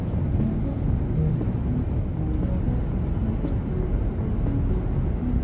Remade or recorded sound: recorded